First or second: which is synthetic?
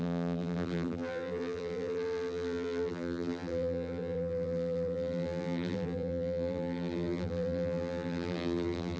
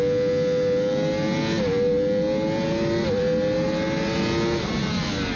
first